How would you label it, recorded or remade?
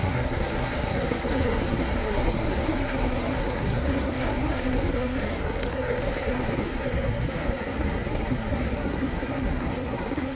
remade